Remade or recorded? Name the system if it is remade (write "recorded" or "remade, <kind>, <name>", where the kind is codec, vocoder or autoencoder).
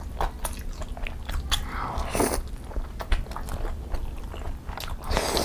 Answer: recorded